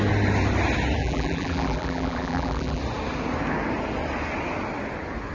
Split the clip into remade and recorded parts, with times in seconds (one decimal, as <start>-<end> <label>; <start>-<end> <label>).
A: 0.0-1.0 recorded; 1.0-2.8 remade; 2.8-5.3 recorded